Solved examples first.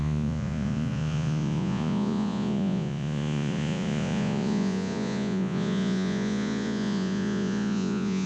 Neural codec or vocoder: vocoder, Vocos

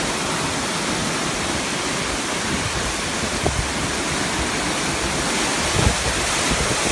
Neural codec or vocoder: none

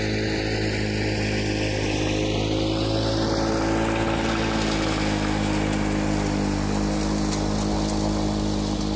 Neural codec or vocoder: none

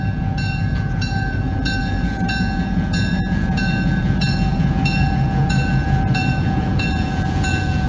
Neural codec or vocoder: vocoder, Vocos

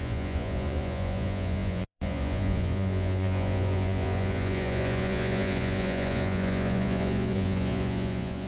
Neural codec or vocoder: vocoder, Vocos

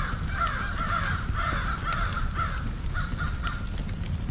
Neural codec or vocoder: none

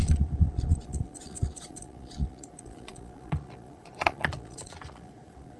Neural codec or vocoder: vocoder, Vocos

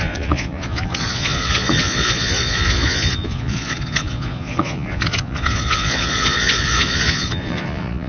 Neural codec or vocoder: vocoder, Vocos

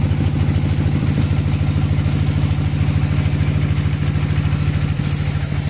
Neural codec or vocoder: none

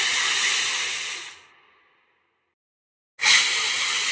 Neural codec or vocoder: none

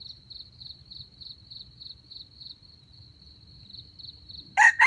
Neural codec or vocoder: none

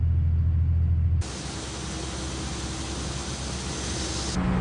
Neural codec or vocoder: none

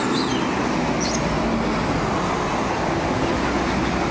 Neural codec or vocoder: none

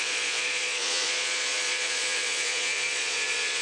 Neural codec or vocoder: vocoder, Vocos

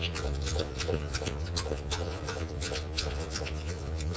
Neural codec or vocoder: vocoder, Vocos